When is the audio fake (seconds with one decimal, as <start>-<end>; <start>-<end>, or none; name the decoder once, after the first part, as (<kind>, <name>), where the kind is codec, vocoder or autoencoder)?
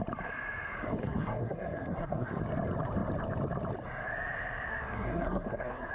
1.0-2.4 (codec, SNAC); 4.7-5.9